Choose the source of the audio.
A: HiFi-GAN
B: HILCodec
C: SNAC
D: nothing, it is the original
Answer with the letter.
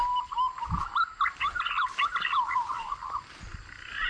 D